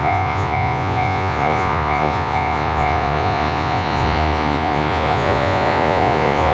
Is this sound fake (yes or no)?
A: yes